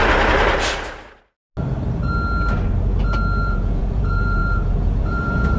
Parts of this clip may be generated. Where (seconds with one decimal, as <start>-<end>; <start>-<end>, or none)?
3.4-5.6

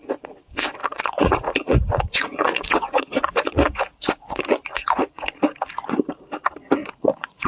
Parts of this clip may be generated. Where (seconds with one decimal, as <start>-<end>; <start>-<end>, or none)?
0.8-5.3; 6.8-7.5

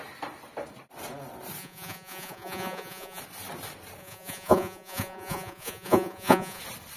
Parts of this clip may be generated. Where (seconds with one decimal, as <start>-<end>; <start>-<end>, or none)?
1.6-3.2; 4.0-6.6

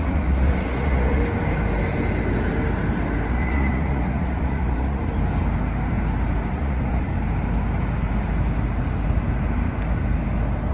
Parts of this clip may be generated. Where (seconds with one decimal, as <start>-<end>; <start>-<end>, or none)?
0.0-1.2; 3.3-5.0; 6.5-7.1